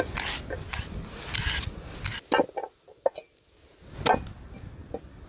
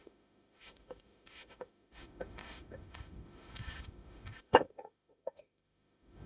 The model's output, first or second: second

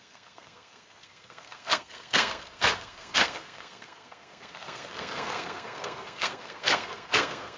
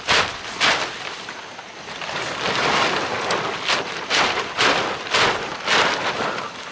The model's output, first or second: first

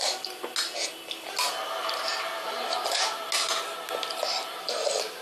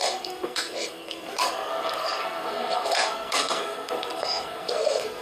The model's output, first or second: second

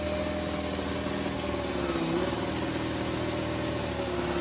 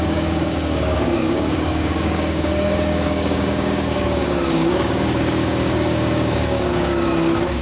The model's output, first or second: second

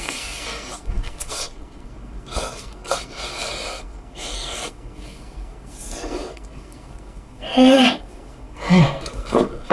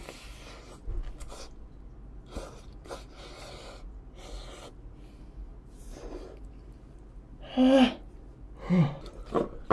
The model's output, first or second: first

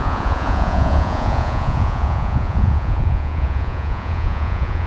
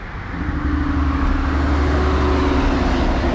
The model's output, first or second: first